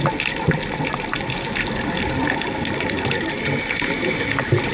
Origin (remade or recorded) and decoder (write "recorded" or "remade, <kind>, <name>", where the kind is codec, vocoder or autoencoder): recorded